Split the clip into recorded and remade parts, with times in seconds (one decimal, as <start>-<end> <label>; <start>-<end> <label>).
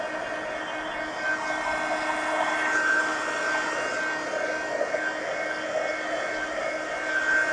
0.0-7.5 recorded